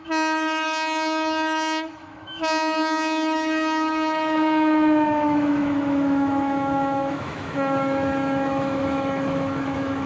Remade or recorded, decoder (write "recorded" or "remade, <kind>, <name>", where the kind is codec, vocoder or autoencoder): remade, autoencoder, DAC-VAE